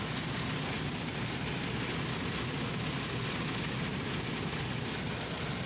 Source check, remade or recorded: recorded